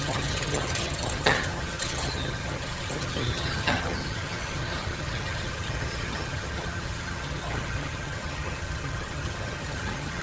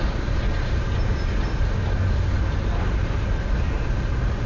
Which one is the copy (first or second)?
first